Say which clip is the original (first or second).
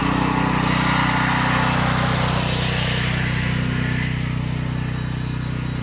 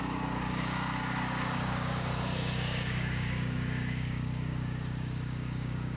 first